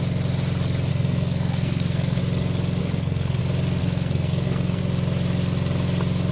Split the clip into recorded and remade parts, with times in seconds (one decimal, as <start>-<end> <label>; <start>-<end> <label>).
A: 0.0-0.9 recorded; 0.9-2.2 remade; 2.2-2.8 recorded; 2.8-3.4 remade; 3.4-3.8 recorded; 3.8-4.8 remade; 4.8-6.3 recorded